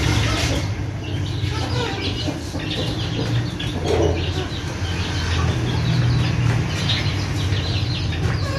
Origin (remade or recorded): recorded